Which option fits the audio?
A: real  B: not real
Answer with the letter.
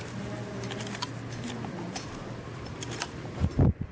A